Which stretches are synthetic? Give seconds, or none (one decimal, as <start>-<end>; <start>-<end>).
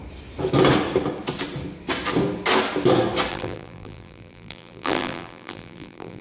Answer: 3.3-6.2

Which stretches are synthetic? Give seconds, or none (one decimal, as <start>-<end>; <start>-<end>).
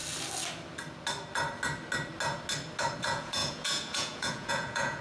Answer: 3.0-5.0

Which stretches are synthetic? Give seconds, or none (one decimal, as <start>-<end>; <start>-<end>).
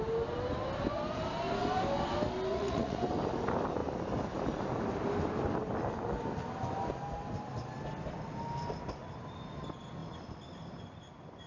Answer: 2.5-3.0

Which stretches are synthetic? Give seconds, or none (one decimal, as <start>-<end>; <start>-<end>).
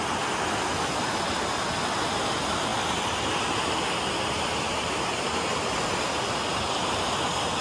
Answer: none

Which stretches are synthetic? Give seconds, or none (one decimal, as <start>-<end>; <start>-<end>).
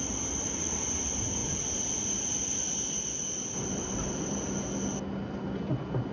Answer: none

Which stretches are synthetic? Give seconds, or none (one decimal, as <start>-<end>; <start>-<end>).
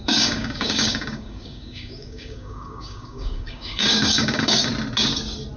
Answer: 0.0-4.7